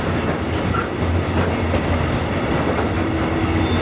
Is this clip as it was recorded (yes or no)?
yes